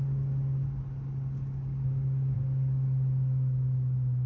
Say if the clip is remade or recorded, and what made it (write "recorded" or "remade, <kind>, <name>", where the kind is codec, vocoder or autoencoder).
recorded